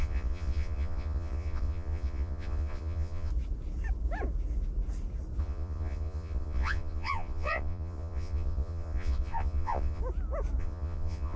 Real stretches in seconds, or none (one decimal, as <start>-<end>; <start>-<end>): 3.3-5.4; 10.0-10.6

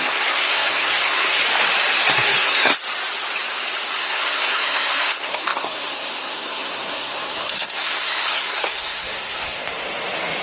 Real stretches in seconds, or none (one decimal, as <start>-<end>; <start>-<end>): 1.4-2.1; 2.7-4.0; 9.6-10.4

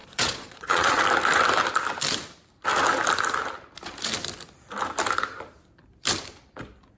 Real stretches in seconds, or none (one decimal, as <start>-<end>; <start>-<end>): 1.0-7.0